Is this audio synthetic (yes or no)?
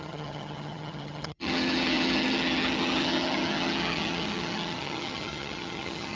yes